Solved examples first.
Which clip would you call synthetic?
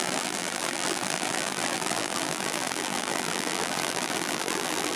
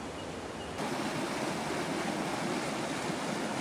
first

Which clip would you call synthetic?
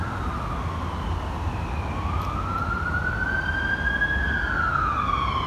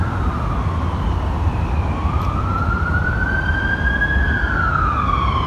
second